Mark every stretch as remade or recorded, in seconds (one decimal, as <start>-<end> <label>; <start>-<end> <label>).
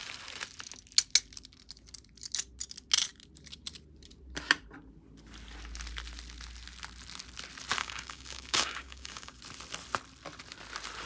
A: 0.0-7.8 recorded; 7.8-9.4 remade; 9.4-11.1 recorded